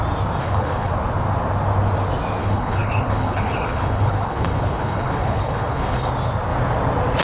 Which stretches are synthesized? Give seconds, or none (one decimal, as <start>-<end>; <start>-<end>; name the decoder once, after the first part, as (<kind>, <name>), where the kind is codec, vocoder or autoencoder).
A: 0.4-0.9 (codec, HILCodec); 2.4-6.1